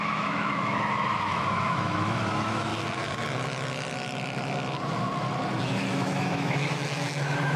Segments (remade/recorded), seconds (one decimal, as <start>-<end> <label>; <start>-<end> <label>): 0.0-2.7 remade; 2.7-5.6 recorded; 5.6-7.6 remade